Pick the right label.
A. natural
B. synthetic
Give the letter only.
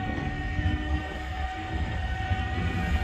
B